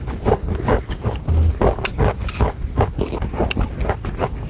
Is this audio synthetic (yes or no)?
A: no